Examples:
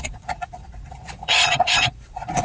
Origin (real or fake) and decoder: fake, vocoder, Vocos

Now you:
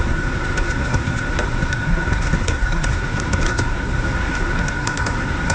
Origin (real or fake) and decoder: fake, codec, SNAC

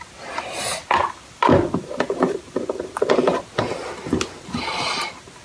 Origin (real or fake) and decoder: real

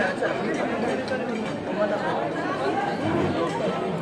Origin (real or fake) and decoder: real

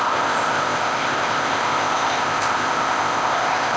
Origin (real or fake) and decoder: fake, codec, ZipCodec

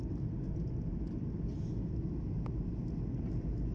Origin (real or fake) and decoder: real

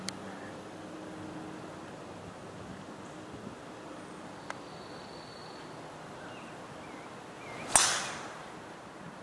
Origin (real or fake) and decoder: real